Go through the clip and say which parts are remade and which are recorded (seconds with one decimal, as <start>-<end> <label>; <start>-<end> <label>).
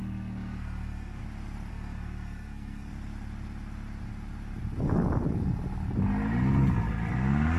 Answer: 0.0-1.2 remade; 1.2-1.7 recorded; 1.7-2.9 remade; 2.9-7.6 recorded